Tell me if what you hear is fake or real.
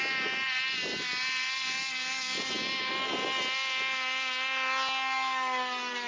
real